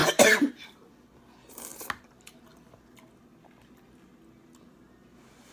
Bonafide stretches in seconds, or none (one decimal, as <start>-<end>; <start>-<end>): 0.9-5.5